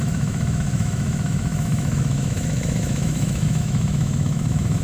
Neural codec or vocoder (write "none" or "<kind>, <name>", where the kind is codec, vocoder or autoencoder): autoencoder, DAC-VAE